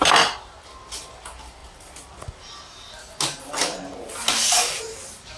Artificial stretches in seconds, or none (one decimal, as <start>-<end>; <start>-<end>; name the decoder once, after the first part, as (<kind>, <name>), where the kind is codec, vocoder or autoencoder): none